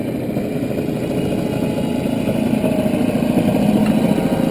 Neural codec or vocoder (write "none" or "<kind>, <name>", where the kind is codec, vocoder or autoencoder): none